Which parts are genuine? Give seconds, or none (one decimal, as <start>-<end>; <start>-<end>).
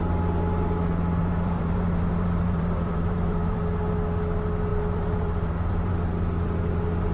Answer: 0.0-1.2; 3.6-4.7; 5.9-7.1